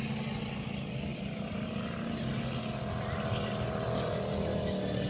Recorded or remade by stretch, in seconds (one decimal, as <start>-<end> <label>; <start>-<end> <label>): 0.0-5.1 recorded